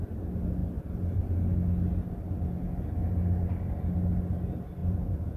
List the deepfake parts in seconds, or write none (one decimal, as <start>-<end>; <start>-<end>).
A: 4.8-5.4